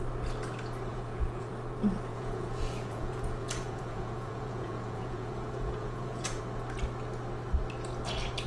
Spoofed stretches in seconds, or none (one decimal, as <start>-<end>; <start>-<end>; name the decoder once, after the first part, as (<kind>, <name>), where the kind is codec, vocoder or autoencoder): 0.9-1.5 (vocoder, Vocos); 2.1-6.4